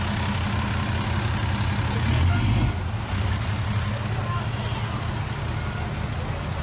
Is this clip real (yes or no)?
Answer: yes